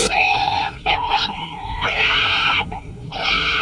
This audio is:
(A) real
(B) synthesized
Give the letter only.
B